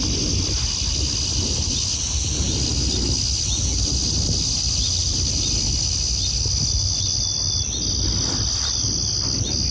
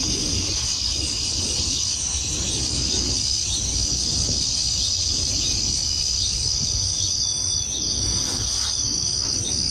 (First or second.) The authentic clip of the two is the first